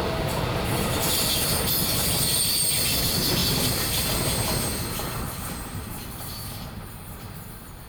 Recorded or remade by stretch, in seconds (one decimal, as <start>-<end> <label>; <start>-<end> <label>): 0.0-1.5 recorded; 1.5-2.3 remade; 2.3-7.9 recorded